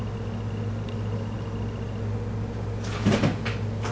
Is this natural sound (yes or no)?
yes